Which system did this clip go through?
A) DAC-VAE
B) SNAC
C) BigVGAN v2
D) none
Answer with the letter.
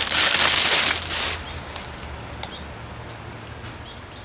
D